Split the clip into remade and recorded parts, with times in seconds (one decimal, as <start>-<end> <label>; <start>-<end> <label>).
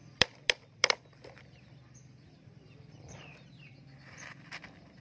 0.0-3.8 remade; 3.8-5.0 recorded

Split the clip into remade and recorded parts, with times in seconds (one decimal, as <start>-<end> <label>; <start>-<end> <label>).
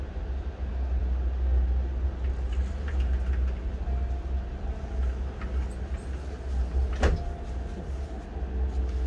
0.0-9.1 recorded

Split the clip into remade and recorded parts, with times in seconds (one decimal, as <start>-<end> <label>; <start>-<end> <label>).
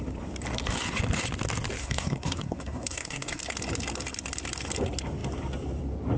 0.0-1.8 recorded; 1.8-3.4 remade; 3.4-6.2 recorded